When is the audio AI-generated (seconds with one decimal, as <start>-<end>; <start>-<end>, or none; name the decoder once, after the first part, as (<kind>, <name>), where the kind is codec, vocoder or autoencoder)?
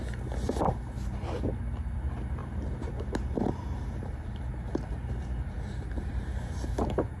2.4-6.7 (vocoder, BigVGAN v2)